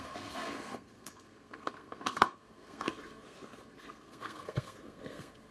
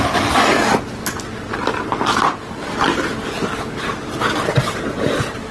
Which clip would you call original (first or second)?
second